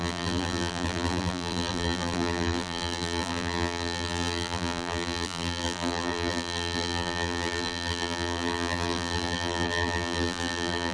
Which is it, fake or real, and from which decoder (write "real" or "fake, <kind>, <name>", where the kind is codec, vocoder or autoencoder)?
fake, vocoder, BigVGAN v2